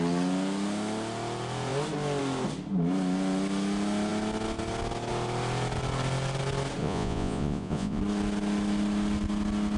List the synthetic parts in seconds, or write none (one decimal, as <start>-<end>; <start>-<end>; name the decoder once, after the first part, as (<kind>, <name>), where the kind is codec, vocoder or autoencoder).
6.8-8.0 (vocoder, Vocos)